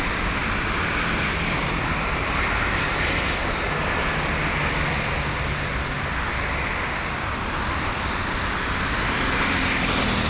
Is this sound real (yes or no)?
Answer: yes